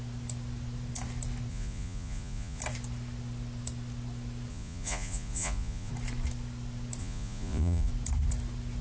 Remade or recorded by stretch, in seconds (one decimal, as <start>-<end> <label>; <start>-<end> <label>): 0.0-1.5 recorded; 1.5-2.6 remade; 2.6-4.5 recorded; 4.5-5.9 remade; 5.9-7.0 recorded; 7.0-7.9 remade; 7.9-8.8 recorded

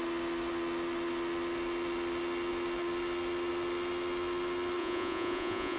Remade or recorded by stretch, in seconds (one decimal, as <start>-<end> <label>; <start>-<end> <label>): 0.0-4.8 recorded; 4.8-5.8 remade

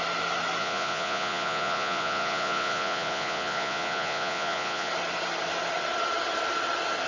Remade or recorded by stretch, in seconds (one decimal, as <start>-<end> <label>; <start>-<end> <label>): 0.0-0.6 recorded; 0.6-4.9 remade; 4.9-7.1 recorded